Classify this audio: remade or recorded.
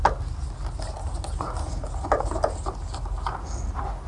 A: recorded